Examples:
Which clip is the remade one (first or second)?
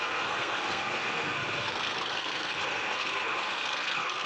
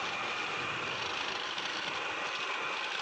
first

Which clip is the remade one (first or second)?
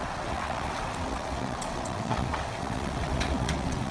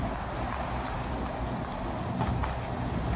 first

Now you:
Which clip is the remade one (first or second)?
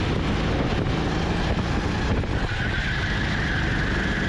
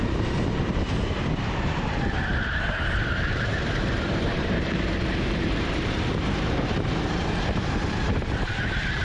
second